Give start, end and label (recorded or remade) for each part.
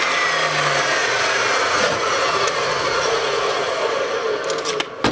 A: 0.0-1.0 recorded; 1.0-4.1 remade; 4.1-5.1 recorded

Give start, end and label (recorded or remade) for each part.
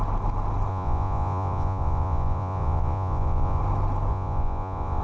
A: 0.0-0.7 recorded; 0.7-3.6 remade; 3.6-4.1 recorded; 4.1-5.0 remade